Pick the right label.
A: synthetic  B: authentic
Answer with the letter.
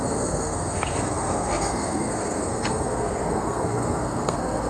A